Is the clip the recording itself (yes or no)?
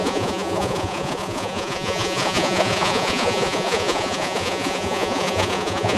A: no